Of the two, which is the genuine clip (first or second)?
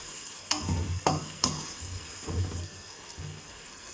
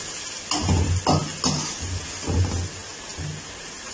second